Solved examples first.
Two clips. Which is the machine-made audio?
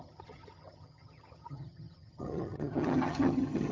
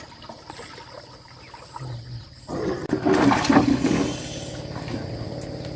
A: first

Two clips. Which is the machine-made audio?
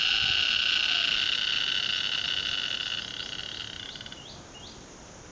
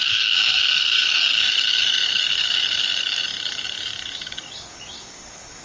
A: second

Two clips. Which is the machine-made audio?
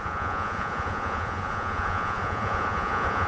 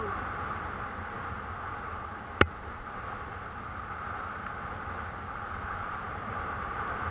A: first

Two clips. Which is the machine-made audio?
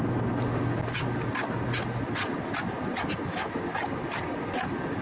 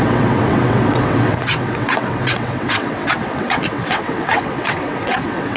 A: second